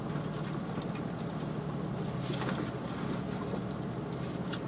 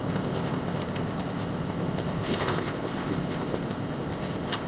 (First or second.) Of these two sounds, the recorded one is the first